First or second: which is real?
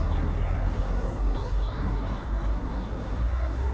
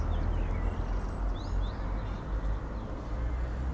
second